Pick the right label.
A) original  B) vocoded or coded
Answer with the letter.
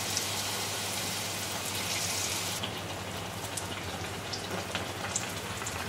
B